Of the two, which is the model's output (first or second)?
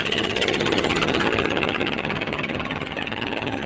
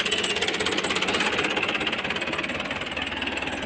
first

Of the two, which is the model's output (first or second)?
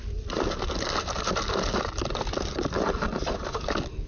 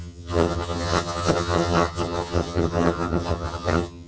second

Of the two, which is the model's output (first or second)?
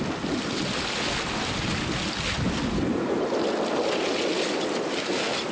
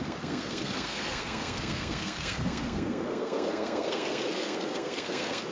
second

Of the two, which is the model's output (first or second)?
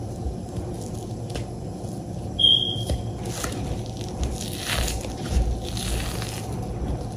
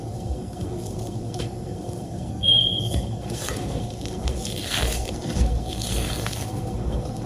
second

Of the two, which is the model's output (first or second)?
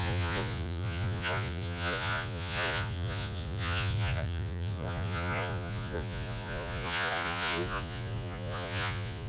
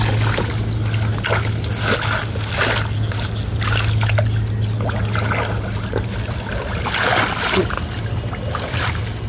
first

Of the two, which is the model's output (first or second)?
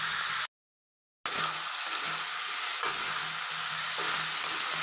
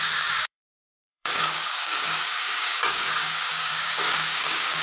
second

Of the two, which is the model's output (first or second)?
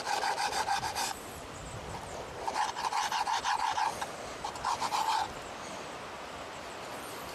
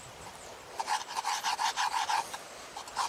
second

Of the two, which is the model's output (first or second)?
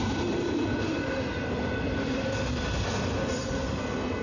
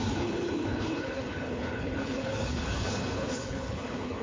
second